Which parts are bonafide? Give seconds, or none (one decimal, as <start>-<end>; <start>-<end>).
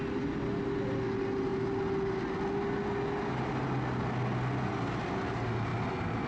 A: 0.0-6.3